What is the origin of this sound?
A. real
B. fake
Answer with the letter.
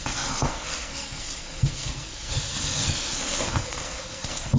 B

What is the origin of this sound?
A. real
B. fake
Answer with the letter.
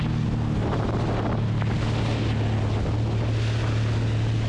A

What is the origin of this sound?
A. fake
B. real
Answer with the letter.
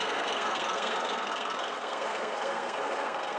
A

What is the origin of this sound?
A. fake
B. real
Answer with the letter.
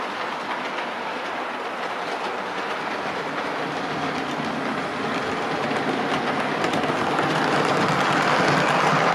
B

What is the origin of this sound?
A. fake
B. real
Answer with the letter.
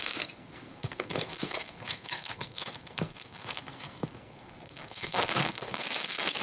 A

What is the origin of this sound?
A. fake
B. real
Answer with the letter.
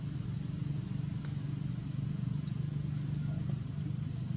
B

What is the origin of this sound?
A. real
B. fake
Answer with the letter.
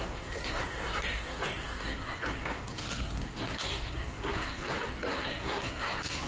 B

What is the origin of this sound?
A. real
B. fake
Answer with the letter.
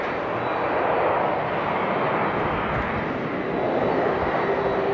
A